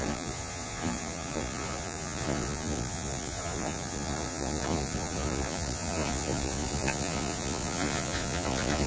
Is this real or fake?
fake